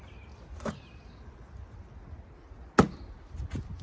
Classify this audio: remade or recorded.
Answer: recorded